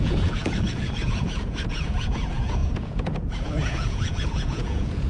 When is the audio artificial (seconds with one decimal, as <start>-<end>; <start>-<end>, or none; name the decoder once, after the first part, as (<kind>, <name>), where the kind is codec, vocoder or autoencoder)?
0.0-5.1 (vocoder, Vocos)